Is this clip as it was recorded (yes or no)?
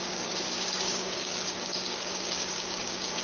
no